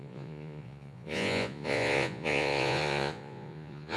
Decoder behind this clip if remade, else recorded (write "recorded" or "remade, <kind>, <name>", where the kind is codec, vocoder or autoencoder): remade, vocoder, Vocos